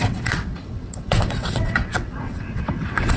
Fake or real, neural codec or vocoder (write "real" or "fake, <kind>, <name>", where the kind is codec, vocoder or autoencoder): fake, vocoder, WaveNeXt